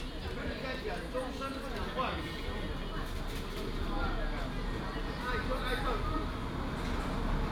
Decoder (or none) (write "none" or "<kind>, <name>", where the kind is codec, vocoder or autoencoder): none